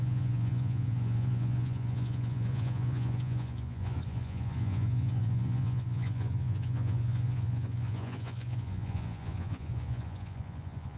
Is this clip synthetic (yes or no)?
yes